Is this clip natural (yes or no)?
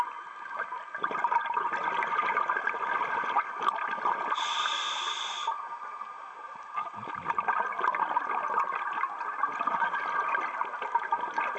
yes